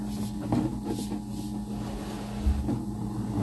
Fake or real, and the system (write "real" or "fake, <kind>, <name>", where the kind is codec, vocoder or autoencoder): real